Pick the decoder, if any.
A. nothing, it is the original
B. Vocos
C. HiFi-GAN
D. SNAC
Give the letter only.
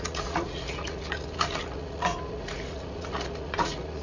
B